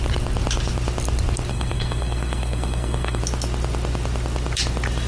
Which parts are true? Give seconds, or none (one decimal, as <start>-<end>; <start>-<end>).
0.0-1.5; 3.2-5.1